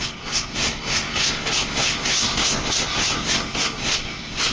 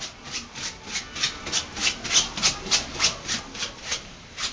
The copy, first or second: first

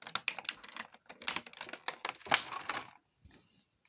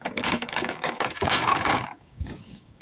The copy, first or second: second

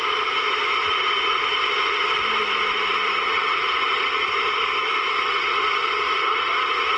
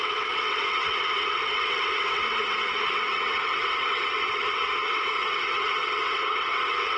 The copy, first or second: second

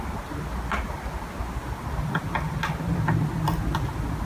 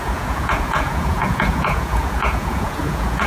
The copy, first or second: second